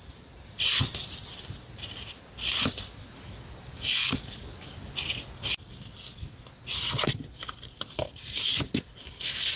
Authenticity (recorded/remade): recorded